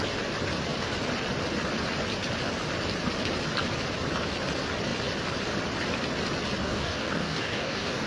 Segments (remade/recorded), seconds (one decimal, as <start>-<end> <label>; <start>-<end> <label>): 0.0-6.6 recorded; 6.6-8.1 remade